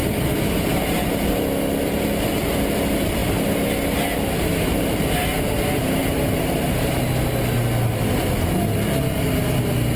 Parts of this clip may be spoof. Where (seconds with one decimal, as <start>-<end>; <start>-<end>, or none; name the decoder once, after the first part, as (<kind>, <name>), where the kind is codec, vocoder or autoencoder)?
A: 6.0-6.8 (vocoder, BigVGAN v2)